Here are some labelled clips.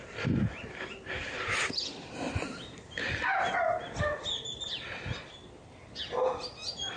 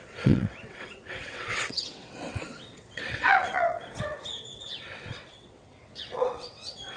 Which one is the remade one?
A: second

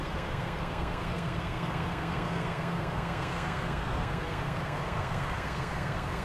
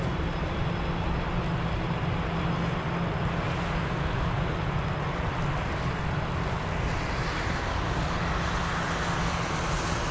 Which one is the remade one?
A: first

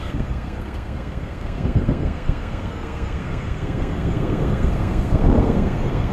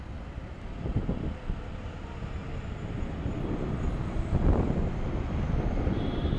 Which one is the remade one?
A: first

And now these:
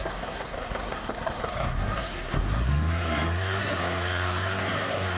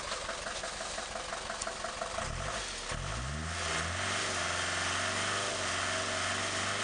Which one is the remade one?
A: first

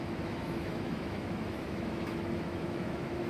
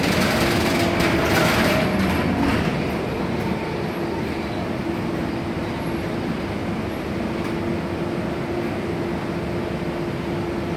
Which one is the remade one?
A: first